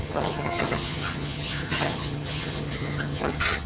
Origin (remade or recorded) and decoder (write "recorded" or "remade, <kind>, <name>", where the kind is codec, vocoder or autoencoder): remade, vocoder, HiFi-GAN